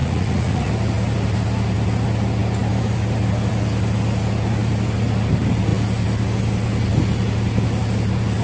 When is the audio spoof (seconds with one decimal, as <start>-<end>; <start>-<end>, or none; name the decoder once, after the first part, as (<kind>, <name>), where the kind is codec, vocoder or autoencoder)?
0.0-0.7 (vocoder, Vocos)